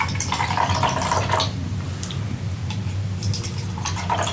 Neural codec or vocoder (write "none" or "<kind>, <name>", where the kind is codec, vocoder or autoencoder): none